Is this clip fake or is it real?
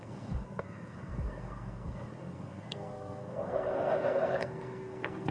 fake